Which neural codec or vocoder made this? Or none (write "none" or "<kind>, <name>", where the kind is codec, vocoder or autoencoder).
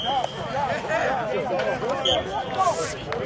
none